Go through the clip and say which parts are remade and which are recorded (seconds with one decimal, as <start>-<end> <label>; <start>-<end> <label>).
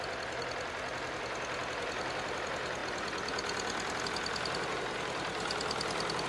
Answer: 0.0-6.3 recorded